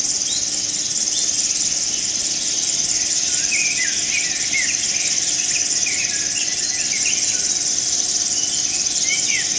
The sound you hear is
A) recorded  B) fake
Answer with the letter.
A